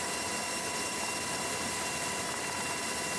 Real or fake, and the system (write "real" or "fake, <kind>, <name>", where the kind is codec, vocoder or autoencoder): real